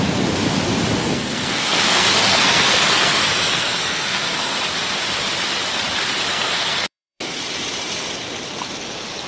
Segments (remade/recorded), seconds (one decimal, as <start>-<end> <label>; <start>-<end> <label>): 0.0-1.0 recorded; 1.0-4.6 remade; 4.6-6.3 recorded; 6.3-7.4 remade; 7.4-9.3 recorded